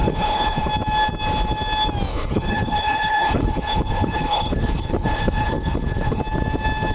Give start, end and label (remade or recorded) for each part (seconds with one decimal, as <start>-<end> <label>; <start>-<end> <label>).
0.0-0.7 remade; 0.7-2.1 recorded; 2.1-6.2 remade; 6.2-6.9 recorded